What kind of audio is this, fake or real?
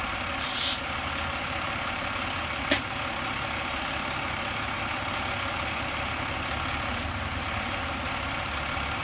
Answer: real